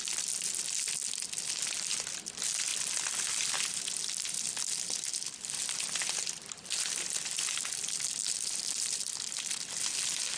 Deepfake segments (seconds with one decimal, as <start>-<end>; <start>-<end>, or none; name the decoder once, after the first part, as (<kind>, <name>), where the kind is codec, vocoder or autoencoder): 8.2-9.0 (vocoder, BigVGAN v2)